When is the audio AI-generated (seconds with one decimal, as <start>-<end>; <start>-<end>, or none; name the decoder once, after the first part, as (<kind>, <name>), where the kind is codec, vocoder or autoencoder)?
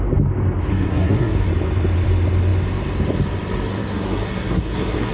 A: 0.7-1.5 (codec, SNAC); 3.7-5.1